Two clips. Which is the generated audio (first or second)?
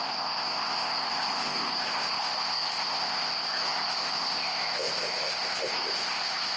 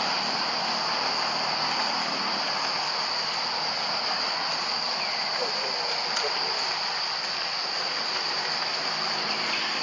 first